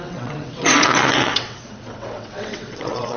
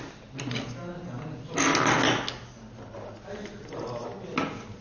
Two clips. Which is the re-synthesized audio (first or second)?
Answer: first